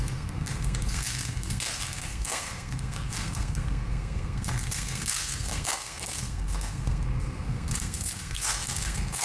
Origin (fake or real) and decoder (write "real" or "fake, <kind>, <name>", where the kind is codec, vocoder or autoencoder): fake, codec, SNAC